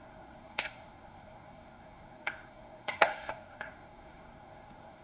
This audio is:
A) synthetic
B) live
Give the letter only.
A